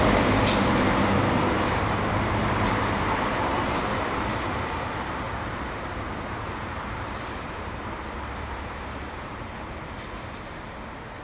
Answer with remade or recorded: remade